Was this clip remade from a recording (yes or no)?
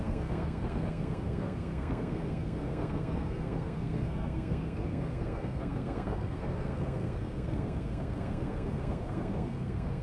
yes